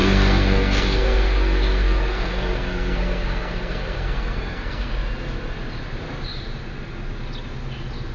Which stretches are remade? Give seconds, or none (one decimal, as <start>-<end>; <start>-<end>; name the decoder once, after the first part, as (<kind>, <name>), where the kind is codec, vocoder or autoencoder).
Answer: 0.0-4.9 (codec, SNAC)